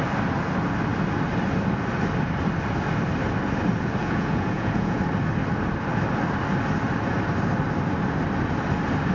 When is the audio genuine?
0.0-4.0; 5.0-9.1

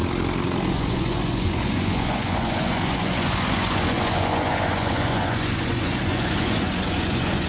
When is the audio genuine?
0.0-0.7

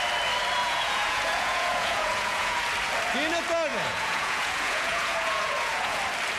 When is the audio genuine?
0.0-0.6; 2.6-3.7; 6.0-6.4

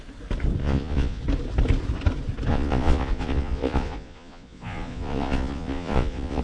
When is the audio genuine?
0.0-0.6; 1.2-2.5

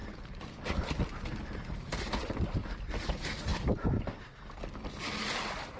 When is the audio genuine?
0.0-5.8

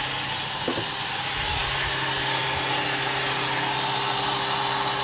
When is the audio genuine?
0.0-5.0

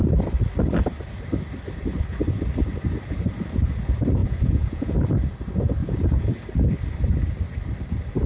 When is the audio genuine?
0.0-4.2; 5.0-5.8; 6.3-8.3

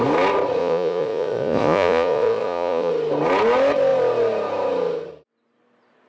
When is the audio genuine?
0.0-0.6; 2.9-6.1